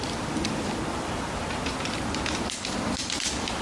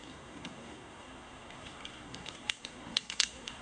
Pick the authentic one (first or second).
first